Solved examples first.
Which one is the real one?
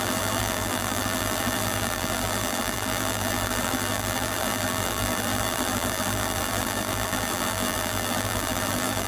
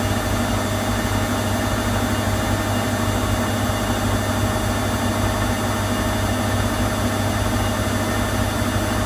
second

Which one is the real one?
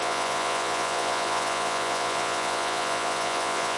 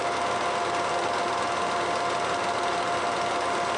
second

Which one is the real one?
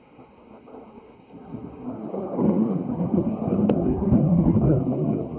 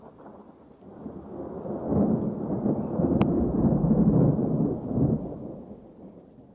second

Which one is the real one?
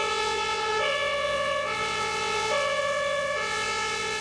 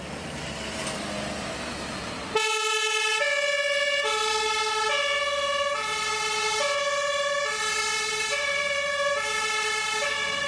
second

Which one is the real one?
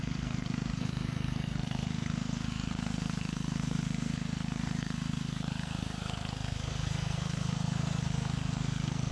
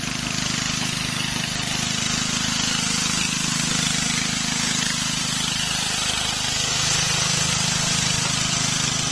second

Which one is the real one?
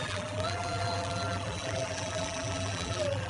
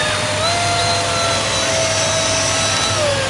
second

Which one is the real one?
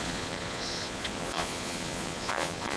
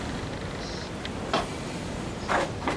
second